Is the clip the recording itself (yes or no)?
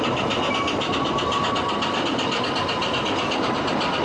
yes